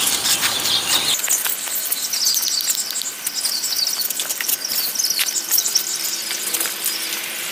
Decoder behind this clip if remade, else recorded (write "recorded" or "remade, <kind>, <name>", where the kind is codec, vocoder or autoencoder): recorded